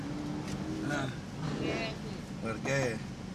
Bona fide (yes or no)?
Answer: yes